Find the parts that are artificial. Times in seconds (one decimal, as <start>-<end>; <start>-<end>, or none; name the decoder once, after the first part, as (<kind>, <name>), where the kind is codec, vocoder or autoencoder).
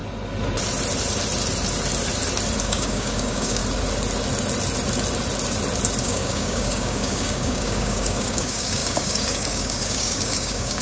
2.6-3.6 (codec, DAC); 6.0-10.8